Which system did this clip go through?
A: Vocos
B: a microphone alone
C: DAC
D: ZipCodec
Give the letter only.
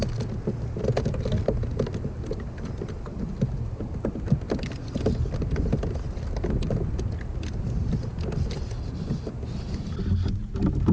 B